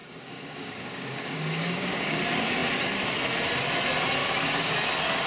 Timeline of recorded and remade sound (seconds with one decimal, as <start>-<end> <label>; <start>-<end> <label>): 0.0-2.2 remade; 2.2-4.2 recorded; 4.2-4.7 remade; 4.7-5.3 recorded